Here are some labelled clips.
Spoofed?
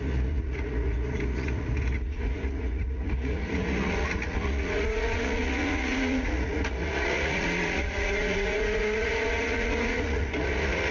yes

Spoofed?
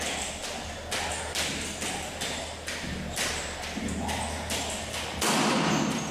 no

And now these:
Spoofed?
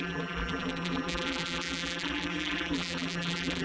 yes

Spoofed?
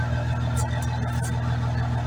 no